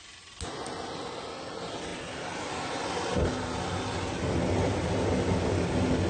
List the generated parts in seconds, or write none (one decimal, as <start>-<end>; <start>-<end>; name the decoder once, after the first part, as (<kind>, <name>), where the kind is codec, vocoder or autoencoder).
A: none